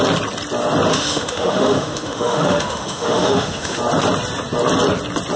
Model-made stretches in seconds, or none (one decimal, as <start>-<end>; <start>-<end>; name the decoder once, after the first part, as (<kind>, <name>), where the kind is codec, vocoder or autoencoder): 0.9-3.8 (autoencoder, DAC-VAE)